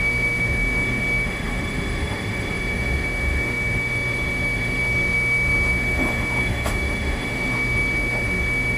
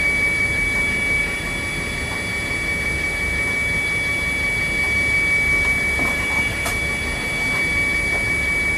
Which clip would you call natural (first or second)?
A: second